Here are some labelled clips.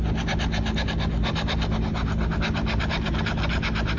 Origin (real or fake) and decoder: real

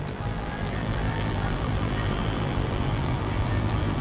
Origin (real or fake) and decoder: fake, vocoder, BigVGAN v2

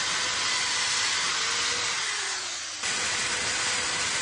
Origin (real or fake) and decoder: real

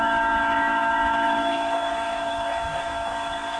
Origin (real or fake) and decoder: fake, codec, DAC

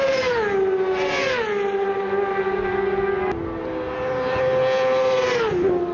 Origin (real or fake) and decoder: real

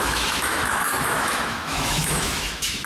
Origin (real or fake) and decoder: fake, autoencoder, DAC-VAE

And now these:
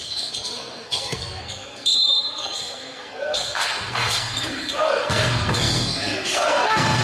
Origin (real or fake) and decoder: fake, codec, SNAC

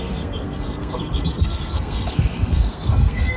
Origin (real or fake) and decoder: fake, codec, SNAC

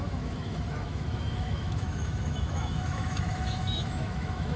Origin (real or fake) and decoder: fake, autoencoder, DAC-VAE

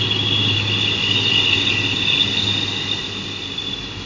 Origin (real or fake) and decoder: real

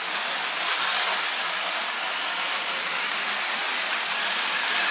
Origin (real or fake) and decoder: real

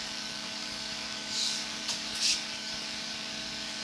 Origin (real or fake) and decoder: fake, codec, DAC